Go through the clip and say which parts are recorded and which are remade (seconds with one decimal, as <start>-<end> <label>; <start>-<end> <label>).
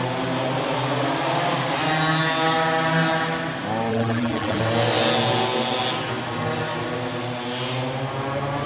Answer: 0.0-3.9 recorded; 3.9-4.6 remade; 4.6-8.7 recorded